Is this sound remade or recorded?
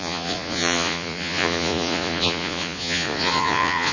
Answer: remade